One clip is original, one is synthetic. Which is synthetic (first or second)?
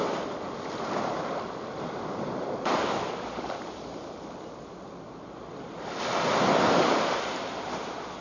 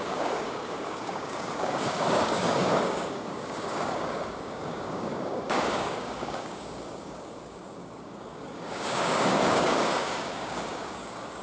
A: second